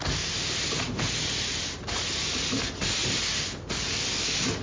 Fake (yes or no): no